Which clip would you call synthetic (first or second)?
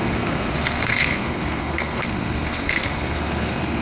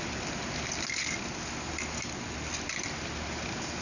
first